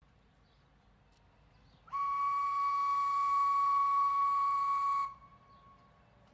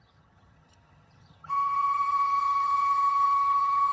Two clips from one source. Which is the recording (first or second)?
first